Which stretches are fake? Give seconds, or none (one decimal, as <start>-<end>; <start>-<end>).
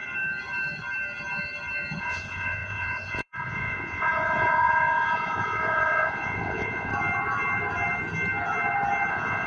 2.0-6.9; 9.1-9.5